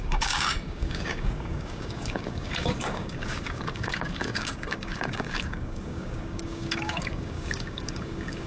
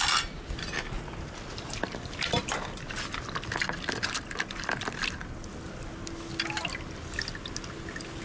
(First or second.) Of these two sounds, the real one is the second